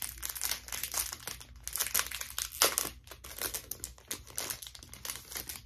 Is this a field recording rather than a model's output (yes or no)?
yes